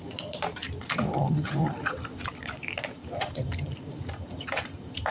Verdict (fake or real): fake